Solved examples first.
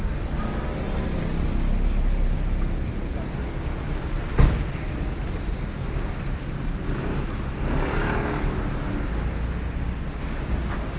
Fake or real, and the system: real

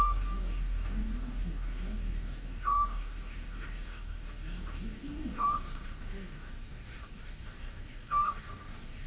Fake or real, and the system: fake, codec, DAC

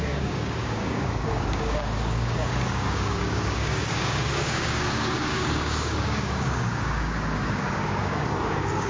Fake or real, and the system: fake, codec, DAC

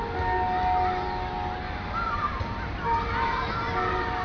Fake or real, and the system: real